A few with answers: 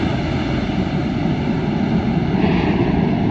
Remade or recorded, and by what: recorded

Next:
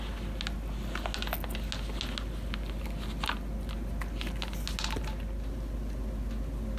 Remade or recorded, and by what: recorded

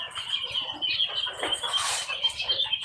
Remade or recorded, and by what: recorded